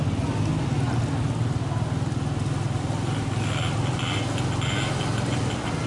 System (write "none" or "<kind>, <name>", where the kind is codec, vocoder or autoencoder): none